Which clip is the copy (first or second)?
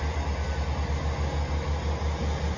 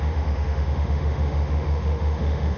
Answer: second